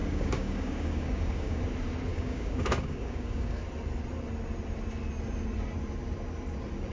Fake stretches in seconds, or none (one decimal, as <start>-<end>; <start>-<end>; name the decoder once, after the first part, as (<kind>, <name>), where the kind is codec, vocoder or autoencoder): 0.0-1.6 (codec, DAC); 2.1-3.6